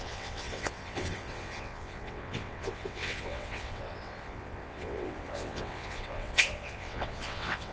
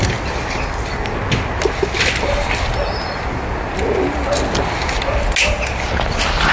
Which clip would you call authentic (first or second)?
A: second